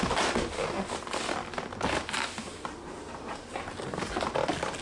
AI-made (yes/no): no